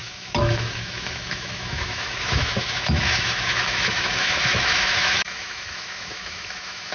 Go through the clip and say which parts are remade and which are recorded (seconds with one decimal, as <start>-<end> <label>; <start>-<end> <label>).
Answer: 0.0-6.9 remade